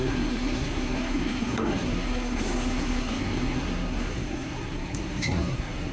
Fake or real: fake